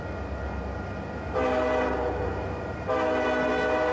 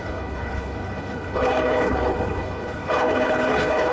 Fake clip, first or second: second